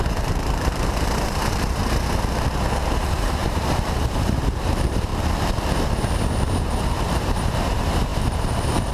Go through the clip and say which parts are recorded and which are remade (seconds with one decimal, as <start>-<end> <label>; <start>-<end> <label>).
0.0-1.8 remade; 1.8-3.0 recorded; 3.0-5.1 remade; 5.1-6.6 recorded; 6.6-8.9 remade